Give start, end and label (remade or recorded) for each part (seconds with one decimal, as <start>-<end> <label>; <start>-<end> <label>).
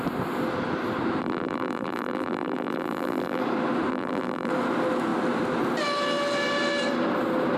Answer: 0.0-1.2 recorded; 1.2-3.4 remade; 3.4-3.9 recorded; 3.9-4.5 remade; 4.5-7.6 recorded